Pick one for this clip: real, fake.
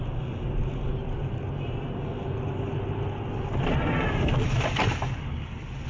real